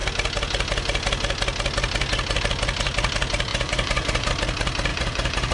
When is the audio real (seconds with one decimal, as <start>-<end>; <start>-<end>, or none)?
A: 0.0-3.5; 4.3-4.9